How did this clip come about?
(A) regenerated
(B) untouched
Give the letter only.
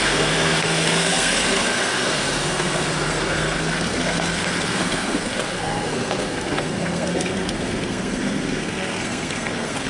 A